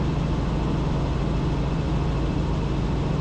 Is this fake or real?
real